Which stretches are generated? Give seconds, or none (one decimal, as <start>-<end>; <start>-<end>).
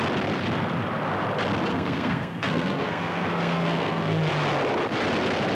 1.7-4.3